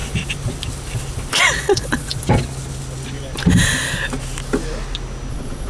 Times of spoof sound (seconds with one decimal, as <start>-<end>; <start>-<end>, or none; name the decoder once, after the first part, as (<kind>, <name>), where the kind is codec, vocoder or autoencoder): 1.3-2.1 (vocoder, Vocos); 5.3-5.7